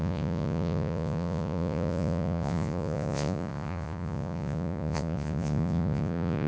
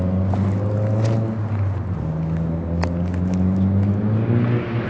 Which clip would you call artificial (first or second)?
first